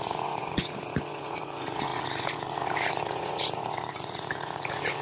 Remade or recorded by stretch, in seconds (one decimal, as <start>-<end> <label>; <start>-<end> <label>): 0.0-5.0 remade